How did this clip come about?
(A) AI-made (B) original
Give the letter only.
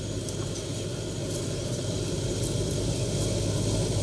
B